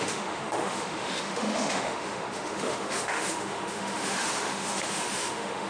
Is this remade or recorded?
remade